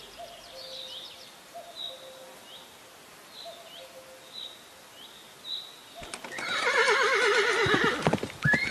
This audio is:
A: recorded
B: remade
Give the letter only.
A